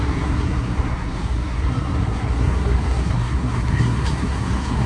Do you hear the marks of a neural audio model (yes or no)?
yes